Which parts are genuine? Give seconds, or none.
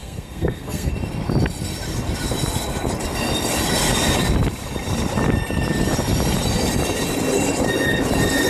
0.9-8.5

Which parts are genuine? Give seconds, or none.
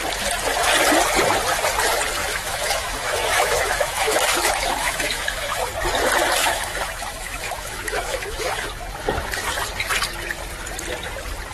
0.0-2.2; 5.7-6.4; 8.7-11.5